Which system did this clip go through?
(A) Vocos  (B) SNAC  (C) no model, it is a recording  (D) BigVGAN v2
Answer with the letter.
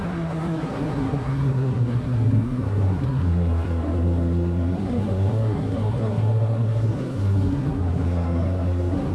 B